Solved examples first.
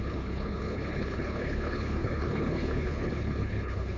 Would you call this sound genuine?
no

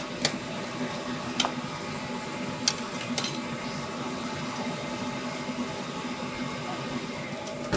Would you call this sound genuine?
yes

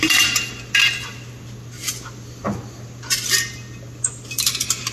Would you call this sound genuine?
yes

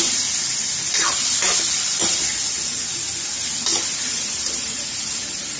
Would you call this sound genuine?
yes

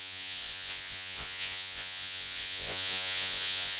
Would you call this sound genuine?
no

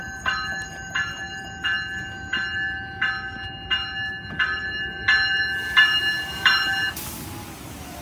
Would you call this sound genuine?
yes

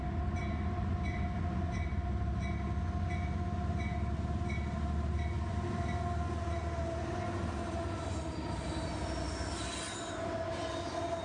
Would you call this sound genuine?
yes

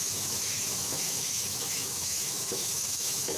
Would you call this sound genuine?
no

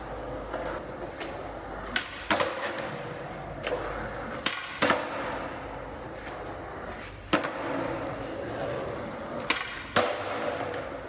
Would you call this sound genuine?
yes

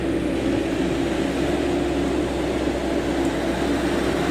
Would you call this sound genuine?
yes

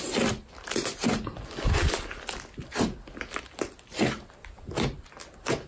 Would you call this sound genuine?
yes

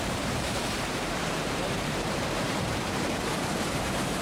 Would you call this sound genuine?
no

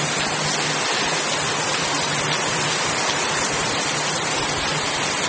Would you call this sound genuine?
yes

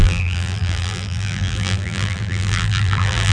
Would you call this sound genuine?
no